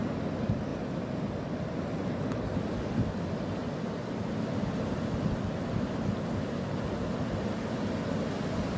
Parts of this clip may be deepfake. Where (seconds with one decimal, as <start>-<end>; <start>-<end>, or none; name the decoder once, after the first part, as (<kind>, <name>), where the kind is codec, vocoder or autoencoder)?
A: none